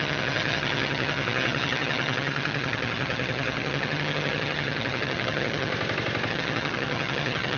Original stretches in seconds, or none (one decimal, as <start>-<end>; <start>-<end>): 5.7-6.3